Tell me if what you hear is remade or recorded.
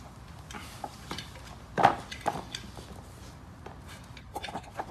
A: remade